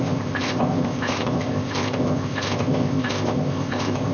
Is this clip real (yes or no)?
no